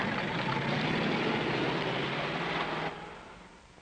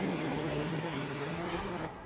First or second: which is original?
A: first